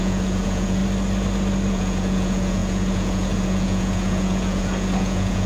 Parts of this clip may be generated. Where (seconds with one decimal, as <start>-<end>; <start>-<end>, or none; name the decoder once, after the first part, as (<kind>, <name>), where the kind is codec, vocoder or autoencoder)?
0.0-0.8 (vocoder, Vocos); 1.7-5.5